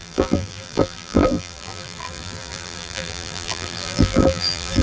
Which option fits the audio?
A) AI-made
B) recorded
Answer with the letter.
A